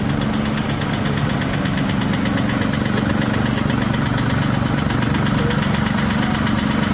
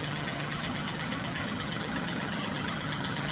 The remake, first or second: second